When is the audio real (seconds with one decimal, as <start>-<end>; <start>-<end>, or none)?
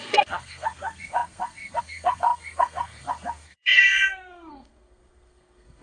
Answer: none